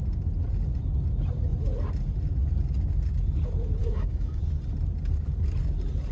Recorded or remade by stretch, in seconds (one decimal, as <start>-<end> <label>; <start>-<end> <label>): 0.0-3.8 recorded; 3.8-4.4 remade; 4.4-6.1 recorded